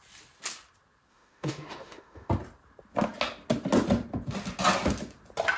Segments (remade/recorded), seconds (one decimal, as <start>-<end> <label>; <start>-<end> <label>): 0.0-1.1 recorded; 1.1-2.3 remade; 2.3-5.6 recorded